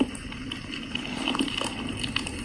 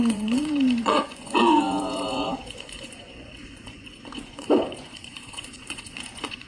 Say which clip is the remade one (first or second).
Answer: second